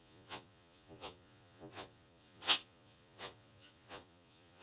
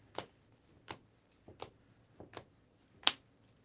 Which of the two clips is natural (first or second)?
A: second